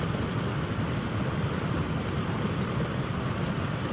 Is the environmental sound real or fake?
real